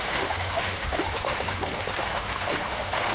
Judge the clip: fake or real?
fake